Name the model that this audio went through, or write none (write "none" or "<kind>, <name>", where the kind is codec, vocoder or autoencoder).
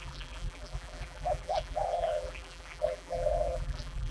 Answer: vocoder, BigVGAN v2